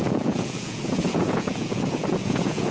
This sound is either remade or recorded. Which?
remade